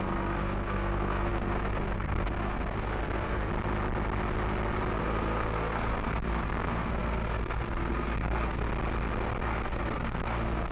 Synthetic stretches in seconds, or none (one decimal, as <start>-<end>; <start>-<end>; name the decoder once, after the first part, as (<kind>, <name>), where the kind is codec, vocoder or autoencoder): 0.0-3.5 (codec, SNAC); 5.0-8.7; 9.4-10.7